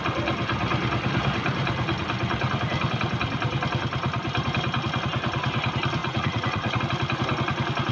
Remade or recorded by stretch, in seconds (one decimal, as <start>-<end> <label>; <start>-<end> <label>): 0.0-6.0 recorded; 6.0-6.8 remade; 6.8-7.9 recorded